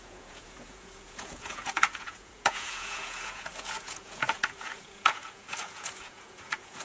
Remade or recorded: remade